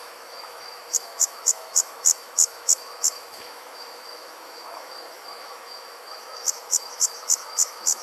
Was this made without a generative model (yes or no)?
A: no